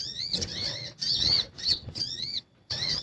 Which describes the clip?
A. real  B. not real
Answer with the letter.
B